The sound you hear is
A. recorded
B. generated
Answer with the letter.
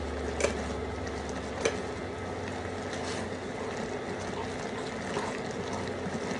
A